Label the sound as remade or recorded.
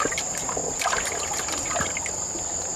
recorded